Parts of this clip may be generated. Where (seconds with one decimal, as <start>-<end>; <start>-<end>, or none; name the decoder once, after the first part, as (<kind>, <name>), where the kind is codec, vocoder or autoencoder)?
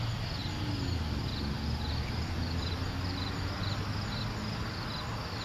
none